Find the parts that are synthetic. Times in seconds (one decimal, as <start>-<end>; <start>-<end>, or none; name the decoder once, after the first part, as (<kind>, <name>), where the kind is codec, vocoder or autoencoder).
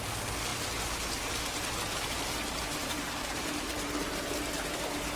2.8-4.2 (vocoder, BigVGAN v2)